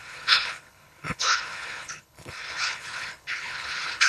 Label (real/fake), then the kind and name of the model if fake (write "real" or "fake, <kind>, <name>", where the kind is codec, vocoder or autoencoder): fake, codec, HILCodec